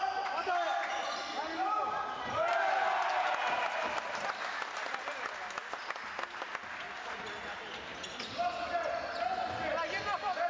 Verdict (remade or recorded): recorded